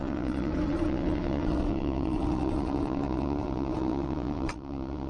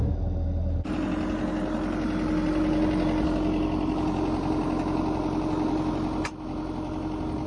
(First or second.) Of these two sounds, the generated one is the first